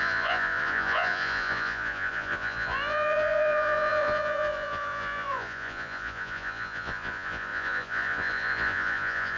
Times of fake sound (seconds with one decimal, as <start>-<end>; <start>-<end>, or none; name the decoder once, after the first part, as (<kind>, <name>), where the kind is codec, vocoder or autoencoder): 0.0-9.4 (vocoder, Vocos)